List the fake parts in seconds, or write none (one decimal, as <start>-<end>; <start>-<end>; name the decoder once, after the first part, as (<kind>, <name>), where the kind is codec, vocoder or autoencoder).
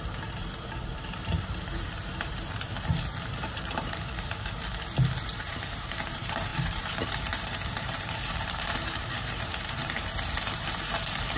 0.0-4.6 (vocoder, BigVGAN v2); 5.2-11.4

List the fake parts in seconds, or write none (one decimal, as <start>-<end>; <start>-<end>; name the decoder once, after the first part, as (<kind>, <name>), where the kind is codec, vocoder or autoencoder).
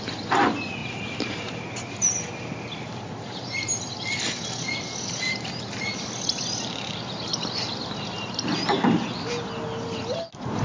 0.8-5.8 (vocoder, BigVGAN v2); 7.3-7.8